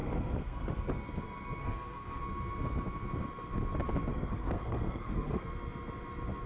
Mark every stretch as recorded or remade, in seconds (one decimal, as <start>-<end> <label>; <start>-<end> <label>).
0.0-0.7 remade; 0.7-1.6 recorded; 1.6-2.2 remade; 2.2-4.1 recorded; 4.1-5.5 remade; 5.5-6.5 recorded